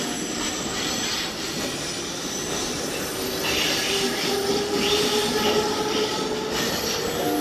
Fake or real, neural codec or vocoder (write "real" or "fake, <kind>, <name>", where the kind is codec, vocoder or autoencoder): real